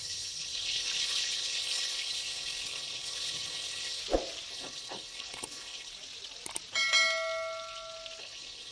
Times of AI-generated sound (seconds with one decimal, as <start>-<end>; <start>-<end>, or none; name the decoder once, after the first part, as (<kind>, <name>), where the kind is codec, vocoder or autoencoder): 0.0-4.0 (codec, HILCodec); 4.5-5.9; 8.2-8.7